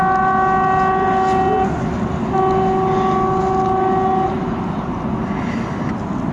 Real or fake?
real